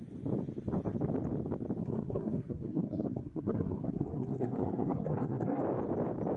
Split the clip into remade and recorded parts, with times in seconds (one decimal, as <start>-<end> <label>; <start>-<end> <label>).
0.0-1.8 recorded; 1.8-5.6 remade; 5.6-6.4 recorded